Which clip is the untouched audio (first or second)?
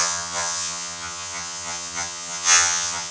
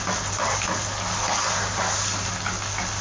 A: second